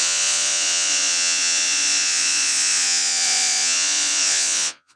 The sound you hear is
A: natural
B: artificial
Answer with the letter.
B